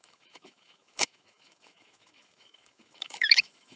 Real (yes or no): no